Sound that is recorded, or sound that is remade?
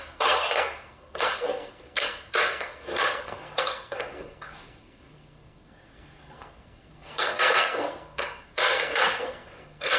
remade